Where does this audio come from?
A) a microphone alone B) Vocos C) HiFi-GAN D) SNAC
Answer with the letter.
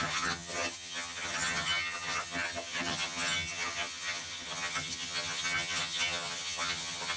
C